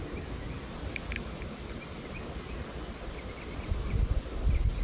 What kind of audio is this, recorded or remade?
recorded